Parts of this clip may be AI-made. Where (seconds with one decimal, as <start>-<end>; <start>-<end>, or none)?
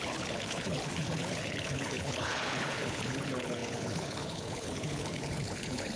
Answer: 0.0-6.0